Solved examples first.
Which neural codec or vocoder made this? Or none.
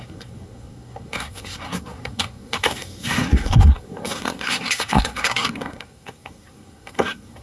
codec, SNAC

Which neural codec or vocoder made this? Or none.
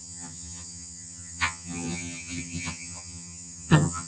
vocoder, HiFi-GAN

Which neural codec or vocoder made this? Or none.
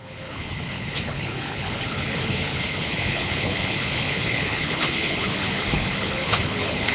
codec, HILCodec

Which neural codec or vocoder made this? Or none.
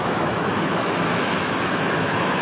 autoencoder, DAC-VAE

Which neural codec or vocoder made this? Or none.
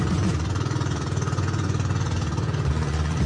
vocoder, Vocos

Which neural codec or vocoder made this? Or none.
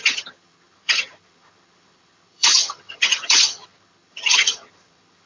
vocoder, HiFi-GAN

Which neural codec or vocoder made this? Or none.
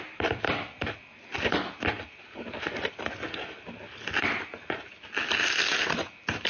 vocoder, BigVGAN v2